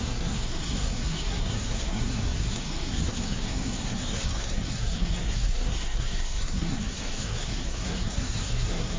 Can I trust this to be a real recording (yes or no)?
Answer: no